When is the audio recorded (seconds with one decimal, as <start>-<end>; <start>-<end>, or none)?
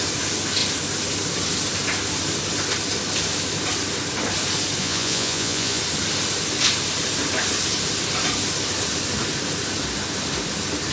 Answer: 0.0-4.8; 5.8-10.9